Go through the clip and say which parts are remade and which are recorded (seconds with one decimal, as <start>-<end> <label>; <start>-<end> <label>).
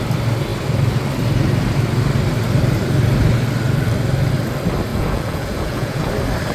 0.0-4.9 recorded; 4.9-6.1 remade; 6.1-6.5 recorded